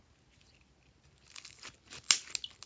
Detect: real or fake real